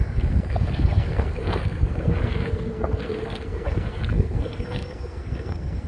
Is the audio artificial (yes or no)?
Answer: yes